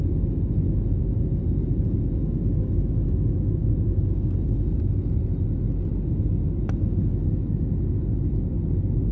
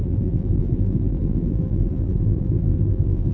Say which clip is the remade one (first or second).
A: second